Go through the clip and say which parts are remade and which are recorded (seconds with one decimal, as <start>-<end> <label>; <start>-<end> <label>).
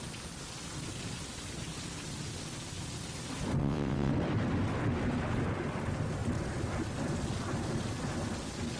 0.0-3.6 recorded; 3.6-4.1 remade; 4.1-8.8 recorded